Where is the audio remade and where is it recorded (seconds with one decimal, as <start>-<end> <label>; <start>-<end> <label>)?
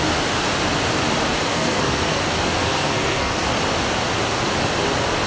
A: 0.0-1.5 recorded; 1.5-2.2 remade; 2.2-2.6 recorded; 2.6-3.5 remade; 3.5-5.3 recorded